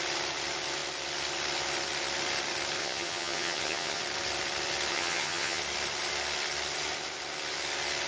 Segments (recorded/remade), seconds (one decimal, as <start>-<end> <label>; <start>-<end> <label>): 0.0-2.8 recorded; 2.8-4.0 remade; 4.0-4.9 recorded; 4.9-5.6 remade; 5.6-8.1 recorded